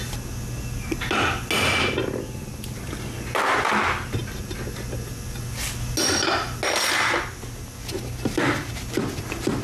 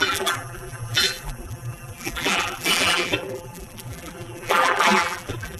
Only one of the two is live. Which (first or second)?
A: first